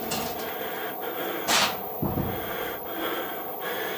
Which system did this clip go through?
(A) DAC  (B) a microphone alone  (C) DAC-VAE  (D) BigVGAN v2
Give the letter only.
B